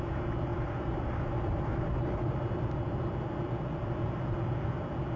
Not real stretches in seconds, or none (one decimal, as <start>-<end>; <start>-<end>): 0.5-3.0